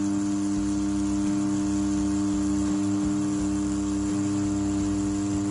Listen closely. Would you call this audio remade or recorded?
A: recorded